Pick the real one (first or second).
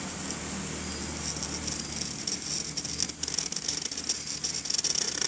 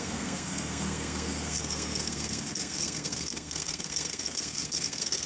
first